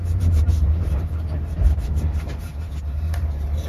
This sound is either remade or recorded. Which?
remade